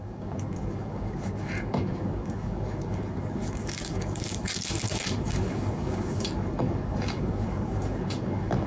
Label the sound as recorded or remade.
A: remade